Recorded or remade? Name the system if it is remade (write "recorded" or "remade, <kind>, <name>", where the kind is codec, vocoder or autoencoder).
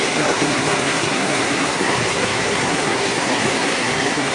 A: remade, codec, SNAC